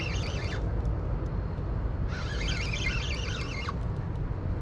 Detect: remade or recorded recorded